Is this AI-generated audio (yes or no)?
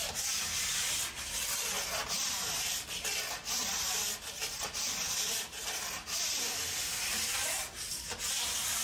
no